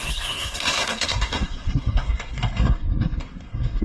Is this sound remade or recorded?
remade